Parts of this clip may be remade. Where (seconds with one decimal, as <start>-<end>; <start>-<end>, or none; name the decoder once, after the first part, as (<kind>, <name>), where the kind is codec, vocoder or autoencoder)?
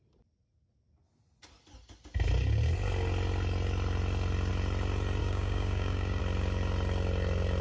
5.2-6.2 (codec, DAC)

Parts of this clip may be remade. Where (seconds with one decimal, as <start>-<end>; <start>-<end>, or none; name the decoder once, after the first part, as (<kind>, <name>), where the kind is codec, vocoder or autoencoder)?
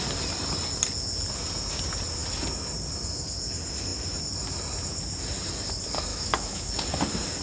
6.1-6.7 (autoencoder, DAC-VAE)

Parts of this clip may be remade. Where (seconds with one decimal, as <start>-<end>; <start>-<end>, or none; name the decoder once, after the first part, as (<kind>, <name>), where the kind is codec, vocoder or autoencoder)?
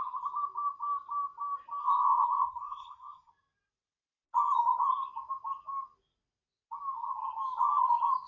1.8-3.3 (codec, SNAC)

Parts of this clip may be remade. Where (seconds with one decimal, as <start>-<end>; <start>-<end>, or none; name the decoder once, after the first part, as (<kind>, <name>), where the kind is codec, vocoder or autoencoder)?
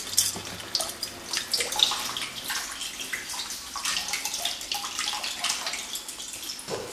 none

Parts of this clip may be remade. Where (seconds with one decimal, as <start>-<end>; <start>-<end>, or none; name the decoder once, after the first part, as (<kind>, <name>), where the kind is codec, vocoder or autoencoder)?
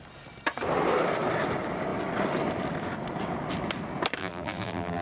4.2-5.0 (vocoder, BigVGAN v2)